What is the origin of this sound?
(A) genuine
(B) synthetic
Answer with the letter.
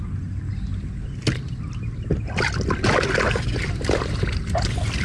A